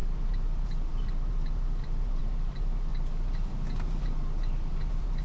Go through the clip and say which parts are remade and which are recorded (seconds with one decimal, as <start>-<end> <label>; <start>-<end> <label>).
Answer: 0.0-5.2 remade